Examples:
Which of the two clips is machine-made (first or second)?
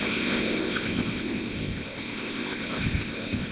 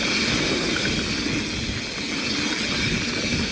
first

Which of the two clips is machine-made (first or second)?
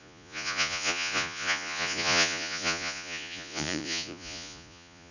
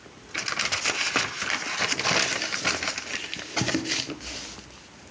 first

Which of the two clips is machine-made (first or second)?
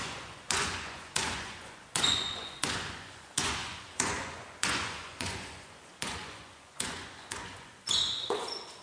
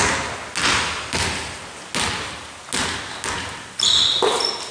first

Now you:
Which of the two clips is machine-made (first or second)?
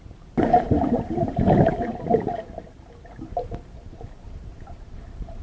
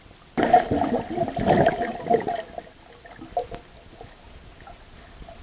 first